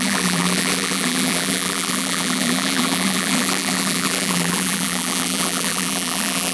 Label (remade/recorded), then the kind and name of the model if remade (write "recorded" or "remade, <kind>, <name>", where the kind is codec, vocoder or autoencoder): remade, vocoder, BigVGAN v2